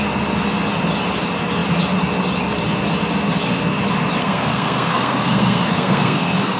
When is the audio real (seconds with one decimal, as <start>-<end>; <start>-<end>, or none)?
0.0-4.2